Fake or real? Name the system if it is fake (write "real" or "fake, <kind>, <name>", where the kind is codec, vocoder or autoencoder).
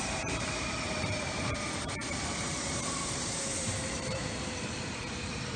fake, vocoder, BigVGAN v2